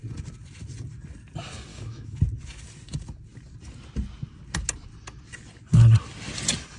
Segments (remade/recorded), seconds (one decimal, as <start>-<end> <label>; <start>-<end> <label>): 0.0-1.7 recorded; 1.7-2.2 remade; 2.2-6.8 recorded